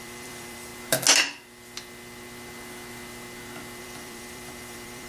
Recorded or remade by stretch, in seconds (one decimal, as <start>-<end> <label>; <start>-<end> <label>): 0.0-0.7 remade; 0.7-3.8 recorded; 3.8-5.1 remade